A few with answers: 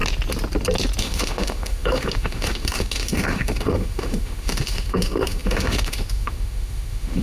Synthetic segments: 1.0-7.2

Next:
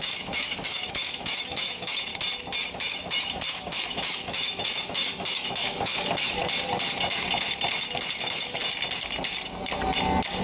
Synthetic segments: 0.0-2.1; 2.7-6.4; 8.1-8.6

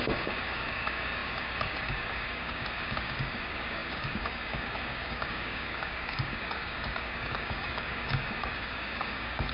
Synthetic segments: 0.0-9.5

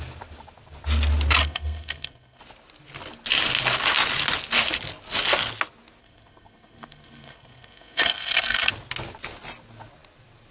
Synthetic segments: 1.4-2.4; 6.0-8.7

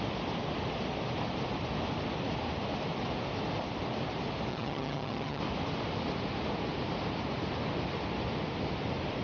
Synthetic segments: 4.5-5.4